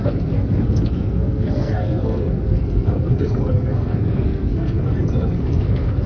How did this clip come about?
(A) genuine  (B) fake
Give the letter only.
B